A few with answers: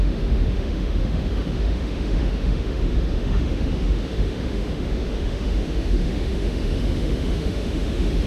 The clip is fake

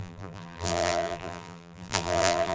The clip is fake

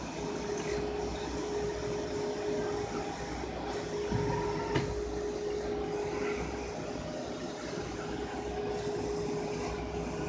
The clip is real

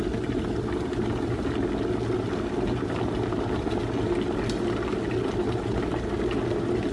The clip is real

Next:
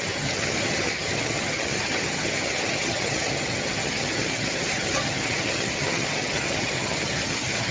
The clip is fake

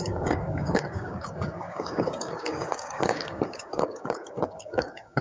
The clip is fake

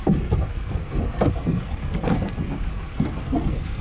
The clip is fake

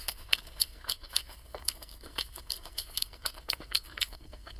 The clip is fake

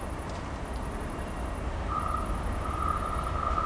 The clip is real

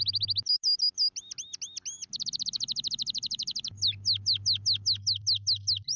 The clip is real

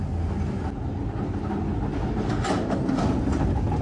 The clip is real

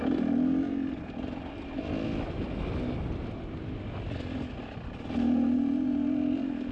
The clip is real